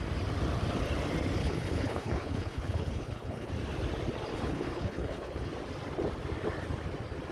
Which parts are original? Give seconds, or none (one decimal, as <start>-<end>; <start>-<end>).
0.0-1.4; 3.5-4.3; 5.5-7.3